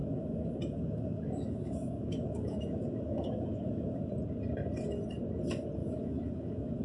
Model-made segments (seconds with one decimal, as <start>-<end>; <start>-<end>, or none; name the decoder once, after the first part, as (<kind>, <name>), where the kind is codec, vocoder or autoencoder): 0.0-4.1 (autoencoder, DAC-VAE); 5.8-6.8